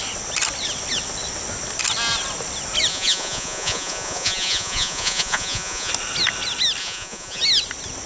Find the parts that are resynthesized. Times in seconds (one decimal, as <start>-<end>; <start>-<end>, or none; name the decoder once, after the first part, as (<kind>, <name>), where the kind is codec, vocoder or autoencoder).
2.9-5.9 (vocoder, Vocos); 6.8-7.4